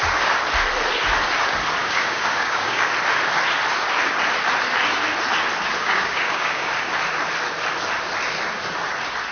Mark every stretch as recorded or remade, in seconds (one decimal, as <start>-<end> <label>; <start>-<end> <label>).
0.0-1.8 recorded; 1.8-2.9 remade; 2.9-5.8 recorded; 5.8-6.7 remade; 6.7-9.3 recorded